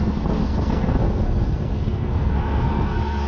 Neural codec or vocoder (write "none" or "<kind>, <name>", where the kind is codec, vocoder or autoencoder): codec, SNAC